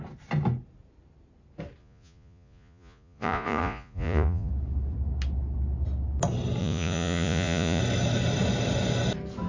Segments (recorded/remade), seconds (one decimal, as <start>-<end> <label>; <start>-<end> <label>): 0.0-1.8 recorded; 1.8-4.5 remade; 4.5-6.6 recorded; 6.6-7.8 remade; 7.8-9.5 recorded